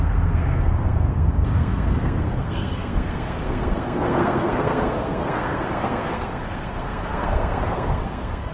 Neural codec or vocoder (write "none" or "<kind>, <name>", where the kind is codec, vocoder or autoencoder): codec, SNAC